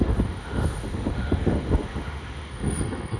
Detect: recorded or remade remade